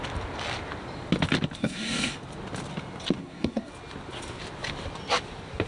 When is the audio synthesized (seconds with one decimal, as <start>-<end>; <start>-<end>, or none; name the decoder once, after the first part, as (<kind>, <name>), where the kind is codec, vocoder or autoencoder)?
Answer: 1.6-2.1 (codec, SNAC); 3.2-3.7